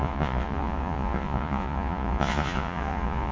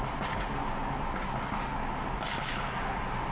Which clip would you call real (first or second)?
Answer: second